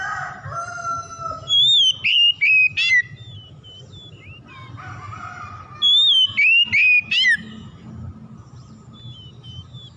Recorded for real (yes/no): yes